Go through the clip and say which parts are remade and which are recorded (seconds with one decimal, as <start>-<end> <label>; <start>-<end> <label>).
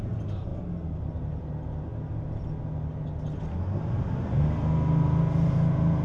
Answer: 0.0-6.0 recorded